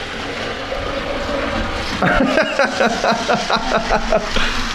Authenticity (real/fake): real